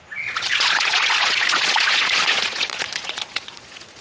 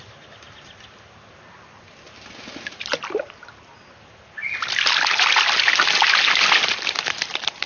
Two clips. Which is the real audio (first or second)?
second